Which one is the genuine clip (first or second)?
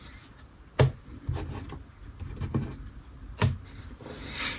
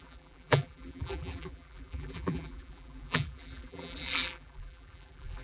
first